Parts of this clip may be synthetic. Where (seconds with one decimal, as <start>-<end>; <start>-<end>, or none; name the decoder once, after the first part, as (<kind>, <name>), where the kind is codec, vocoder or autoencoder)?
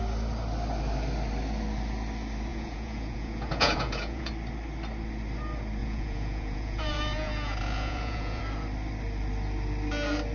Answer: 2.5-4.3 (vocoder, Vocos); 5.8-8.4